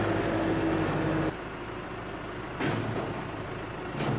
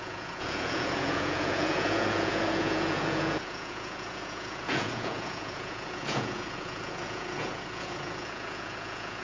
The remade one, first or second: second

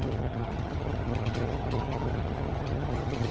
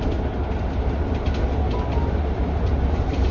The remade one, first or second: first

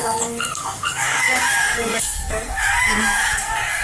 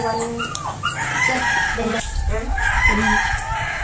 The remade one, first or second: first